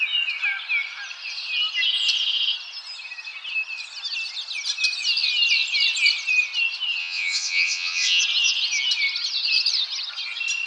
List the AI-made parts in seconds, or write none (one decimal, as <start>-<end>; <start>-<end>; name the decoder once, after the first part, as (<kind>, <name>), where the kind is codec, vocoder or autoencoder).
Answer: 7.0-8.2 (vocoder, WaveNeXt)